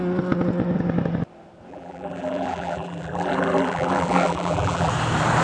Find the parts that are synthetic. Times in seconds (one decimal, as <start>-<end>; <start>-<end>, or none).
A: 1.7-4.9